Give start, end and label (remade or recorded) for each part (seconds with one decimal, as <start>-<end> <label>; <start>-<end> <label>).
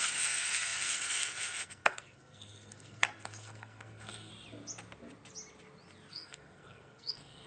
0.0-4.3 remade; 4.3-6.1 recorded; 6.1-7.5 remade